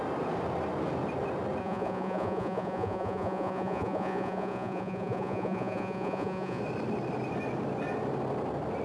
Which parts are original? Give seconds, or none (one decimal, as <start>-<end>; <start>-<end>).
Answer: 0.0-1.6; 6.6-8.8